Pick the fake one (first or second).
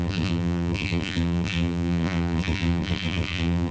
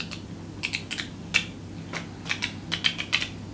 first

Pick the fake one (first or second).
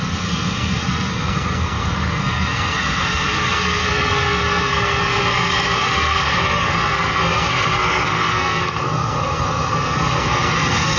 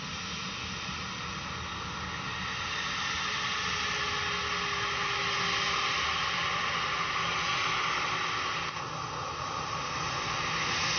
first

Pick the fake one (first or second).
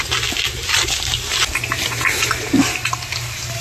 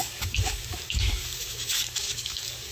second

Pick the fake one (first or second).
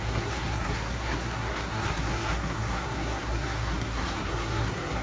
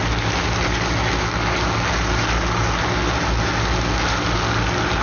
first